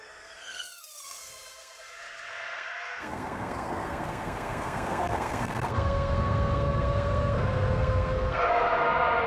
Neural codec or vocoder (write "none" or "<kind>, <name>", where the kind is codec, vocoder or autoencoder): codec, SNAC